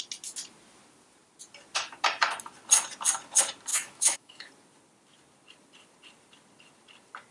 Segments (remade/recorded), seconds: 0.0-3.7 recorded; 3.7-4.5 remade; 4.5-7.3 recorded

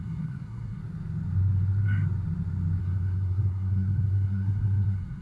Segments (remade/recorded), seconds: 0.0-0.8 remade; 0.8-2.8 recorded; 2.8-5.2 remade